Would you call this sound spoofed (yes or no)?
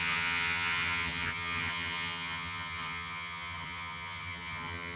yes